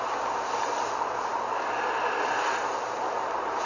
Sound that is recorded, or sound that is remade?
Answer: recorded